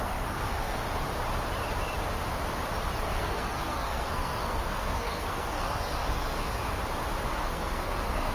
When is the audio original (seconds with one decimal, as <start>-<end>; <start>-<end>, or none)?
0.8-3.0; 6.6-7.3